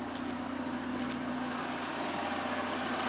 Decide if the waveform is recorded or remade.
recorded